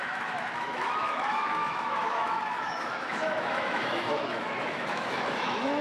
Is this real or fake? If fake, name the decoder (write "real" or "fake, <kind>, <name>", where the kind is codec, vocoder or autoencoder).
fake, autoencoder, DAC-VAE